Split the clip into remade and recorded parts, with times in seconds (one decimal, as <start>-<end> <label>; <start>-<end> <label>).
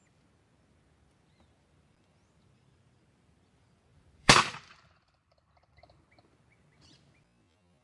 0.0-3.9 recorded; 3.9-6.0 remade; 6.0-7.8 recorded